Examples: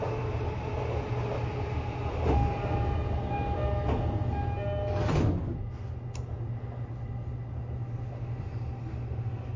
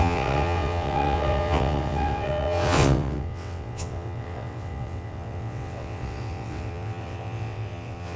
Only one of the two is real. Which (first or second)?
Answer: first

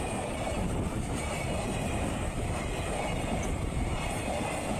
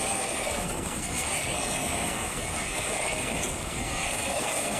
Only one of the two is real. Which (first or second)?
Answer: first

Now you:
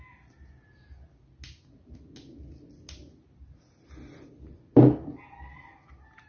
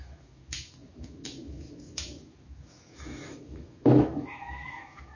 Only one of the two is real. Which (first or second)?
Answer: first